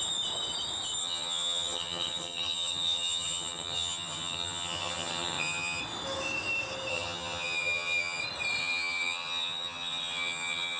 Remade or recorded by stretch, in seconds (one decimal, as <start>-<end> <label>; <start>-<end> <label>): 0.0-1.0 recorded; 1.0-5.8 remade; 5.8-6.9 recorded; 6.9-8.2 remade; 8.2-8.6 recorded; 8.6-10.8 remade